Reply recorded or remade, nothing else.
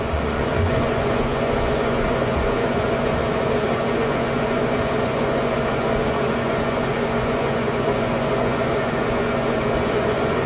remade